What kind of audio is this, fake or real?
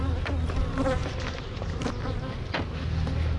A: real